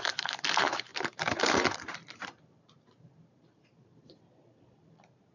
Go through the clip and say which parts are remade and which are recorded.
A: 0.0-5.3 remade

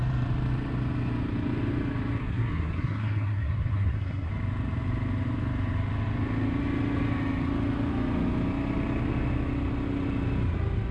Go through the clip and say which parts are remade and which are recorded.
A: 0.0-2.2 recorded; 2.2-4.3 remade; 4.3-10.9 recorded

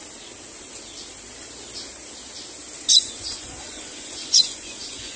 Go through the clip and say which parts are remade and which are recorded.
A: 0.0-2.9 recorded; 2.9-5.2 remade

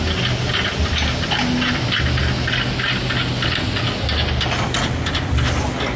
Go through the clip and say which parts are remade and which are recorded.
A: 0.0-6.0 recorded

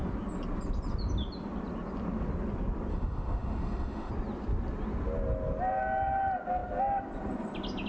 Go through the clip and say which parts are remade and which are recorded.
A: 0.0-2.9 recorded; 2.9-4.1 remade; 4.1-7.9 recorded